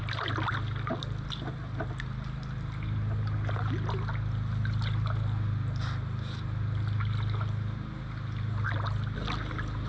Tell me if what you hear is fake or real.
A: real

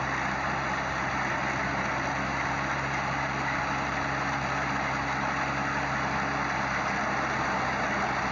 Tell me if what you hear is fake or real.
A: real